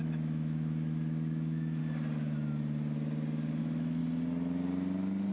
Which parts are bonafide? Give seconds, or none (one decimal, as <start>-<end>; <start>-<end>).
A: 1.8-3.6; 4.0-5.3